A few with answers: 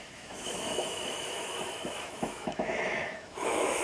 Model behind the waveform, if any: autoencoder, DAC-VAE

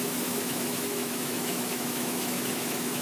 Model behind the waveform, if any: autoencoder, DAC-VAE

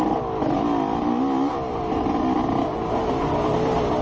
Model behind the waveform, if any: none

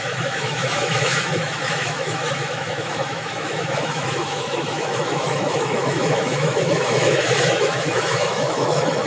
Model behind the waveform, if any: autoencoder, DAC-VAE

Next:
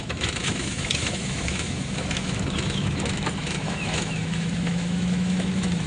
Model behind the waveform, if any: autoencoder, DAC-VAE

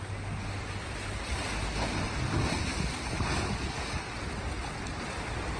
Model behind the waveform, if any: none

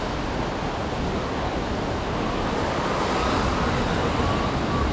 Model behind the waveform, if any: none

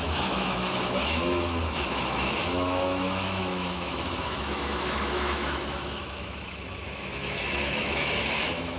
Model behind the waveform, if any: autoencoder, DAC-VAE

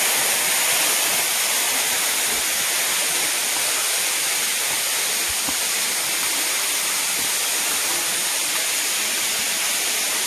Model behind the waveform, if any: none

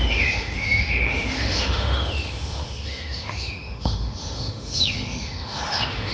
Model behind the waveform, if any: autoencoder, DAC-VAE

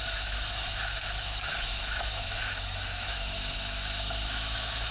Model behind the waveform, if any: autoencoder, DAC-VAE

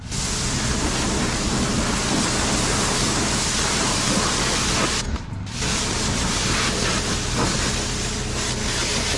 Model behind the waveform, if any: none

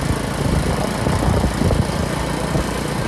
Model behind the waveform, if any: none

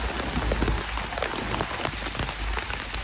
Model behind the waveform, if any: none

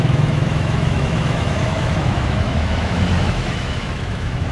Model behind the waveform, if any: autoencoder, DAC-VAE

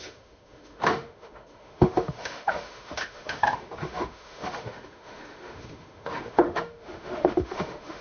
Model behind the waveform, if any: autoencoder, DAC-VAE